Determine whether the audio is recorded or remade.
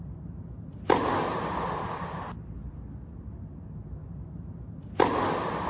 recorded